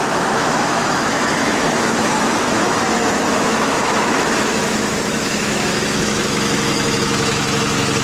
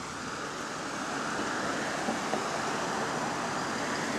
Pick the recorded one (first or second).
second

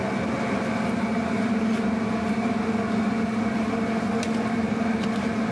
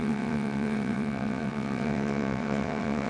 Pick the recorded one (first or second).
first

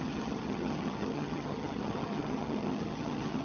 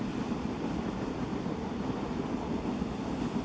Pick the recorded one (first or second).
second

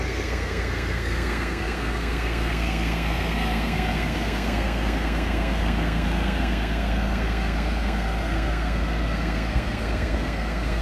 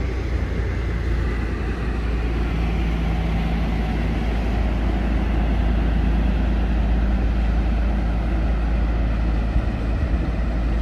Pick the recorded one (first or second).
second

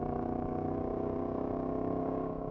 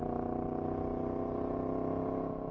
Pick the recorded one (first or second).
second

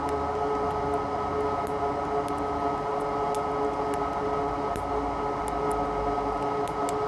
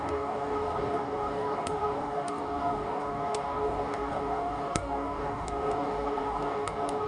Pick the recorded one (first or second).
first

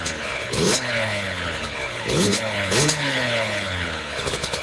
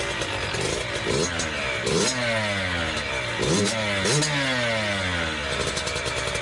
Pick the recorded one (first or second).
second